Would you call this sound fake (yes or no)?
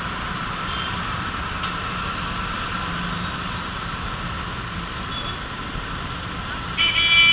no